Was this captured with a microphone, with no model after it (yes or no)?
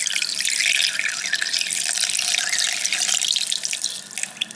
yes